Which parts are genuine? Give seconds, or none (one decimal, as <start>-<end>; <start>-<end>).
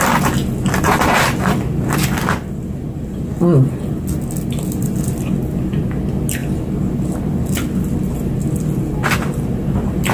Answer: 0.0-10.1